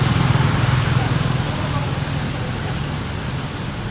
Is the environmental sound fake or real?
real